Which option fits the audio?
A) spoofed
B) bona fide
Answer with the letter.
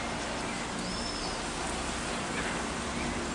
B